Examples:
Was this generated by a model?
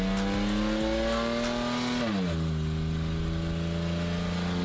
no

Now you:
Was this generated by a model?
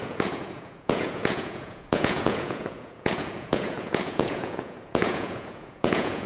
yes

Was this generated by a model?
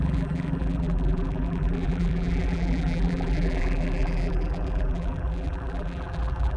yes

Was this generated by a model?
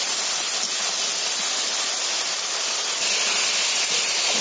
no